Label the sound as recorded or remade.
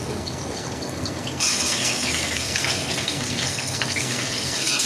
remade